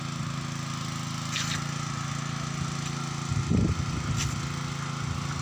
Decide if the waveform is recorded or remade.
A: recorded